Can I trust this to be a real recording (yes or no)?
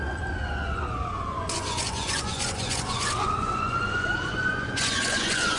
no